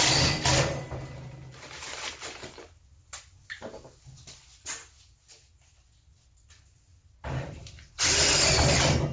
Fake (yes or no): no